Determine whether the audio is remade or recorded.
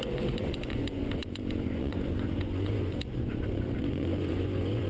remade